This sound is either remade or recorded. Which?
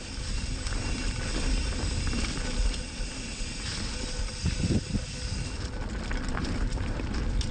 recorded